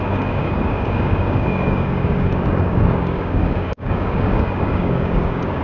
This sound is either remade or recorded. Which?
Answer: remade